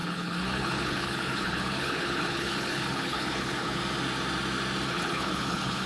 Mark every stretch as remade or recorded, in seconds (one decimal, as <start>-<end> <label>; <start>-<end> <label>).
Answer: 0.0-3.8 remade; 3.8-4.9 recorded; 4.9-5.9 remade